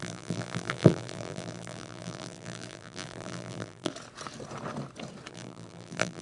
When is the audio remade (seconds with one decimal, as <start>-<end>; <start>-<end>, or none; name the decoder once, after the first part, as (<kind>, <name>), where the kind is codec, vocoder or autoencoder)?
0.0-3.9 (vocoder, BigVGAN v2); 5.3-6.2